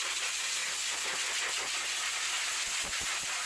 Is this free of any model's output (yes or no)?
yes